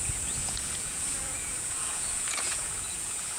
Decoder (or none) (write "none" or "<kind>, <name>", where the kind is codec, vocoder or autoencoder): vocoder, Vocos